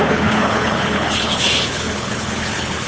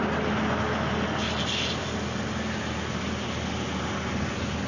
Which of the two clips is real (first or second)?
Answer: second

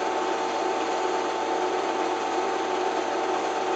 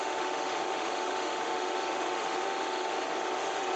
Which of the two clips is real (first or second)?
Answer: first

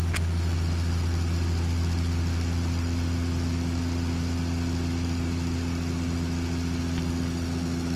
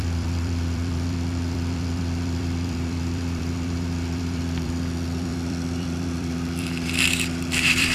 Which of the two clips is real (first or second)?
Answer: first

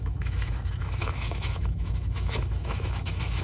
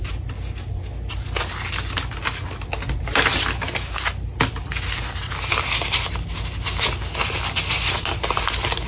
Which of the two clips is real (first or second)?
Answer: second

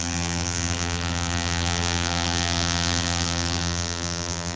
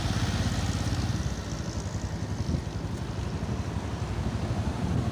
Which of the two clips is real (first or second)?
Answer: second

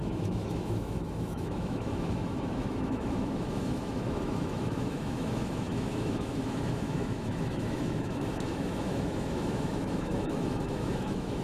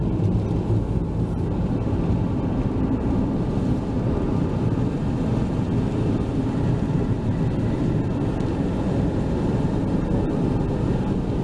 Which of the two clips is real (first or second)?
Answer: second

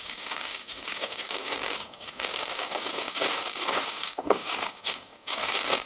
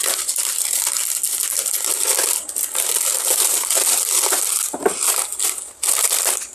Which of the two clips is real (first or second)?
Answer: second